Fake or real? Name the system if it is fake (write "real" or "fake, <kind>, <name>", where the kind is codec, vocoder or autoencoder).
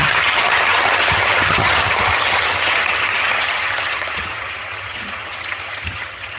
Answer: fake, vocoder, HiFi-GAN